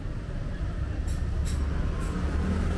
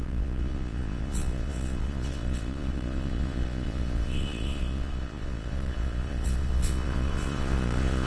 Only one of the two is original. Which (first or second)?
first